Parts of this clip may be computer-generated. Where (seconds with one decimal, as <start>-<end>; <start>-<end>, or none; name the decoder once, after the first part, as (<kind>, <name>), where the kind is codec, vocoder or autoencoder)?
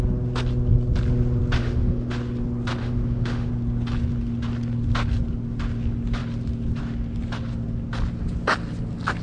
1.6-2.1 (autoencoder, DAC-VAE); 2.8-3.5